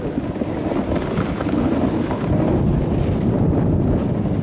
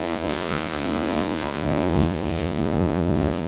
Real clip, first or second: first